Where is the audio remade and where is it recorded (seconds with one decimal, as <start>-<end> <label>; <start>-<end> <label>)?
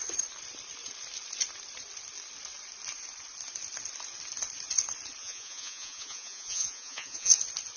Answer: 0.0-5.2 recorded; 5.2-7.3 remade; 7.3-7.8 recorded